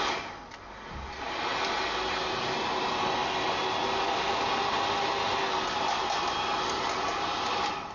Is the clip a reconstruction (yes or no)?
no